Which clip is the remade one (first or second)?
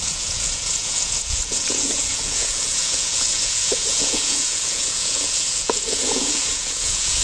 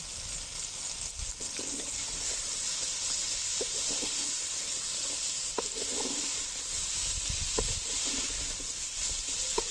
first